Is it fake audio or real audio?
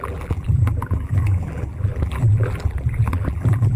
fake